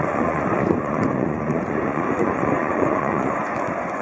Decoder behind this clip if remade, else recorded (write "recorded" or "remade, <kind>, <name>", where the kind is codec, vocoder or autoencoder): remade, vocoder, Vocos